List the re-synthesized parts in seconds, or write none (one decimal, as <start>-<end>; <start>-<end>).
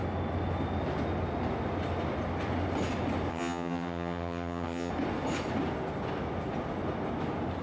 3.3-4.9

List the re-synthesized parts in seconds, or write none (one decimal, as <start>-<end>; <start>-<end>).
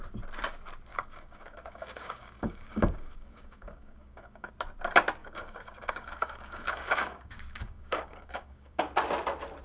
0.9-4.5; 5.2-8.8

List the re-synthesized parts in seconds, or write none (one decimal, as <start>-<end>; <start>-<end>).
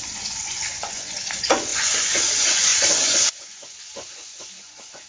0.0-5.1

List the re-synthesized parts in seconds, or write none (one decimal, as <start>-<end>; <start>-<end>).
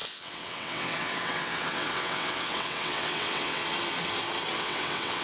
0.0-3.6; 4.6-5.2